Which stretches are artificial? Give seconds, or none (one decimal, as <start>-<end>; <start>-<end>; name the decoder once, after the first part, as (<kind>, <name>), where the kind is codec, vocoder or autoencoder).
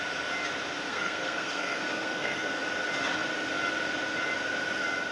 0.9-2.6 (codec, SNAC)